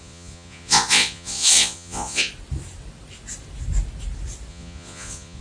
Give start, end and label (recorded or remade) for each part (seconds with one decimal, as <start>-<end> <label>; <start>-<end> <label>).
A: 0.0-2.3 remade; 2.3-4.5 recorded; 4.5-5.4 remade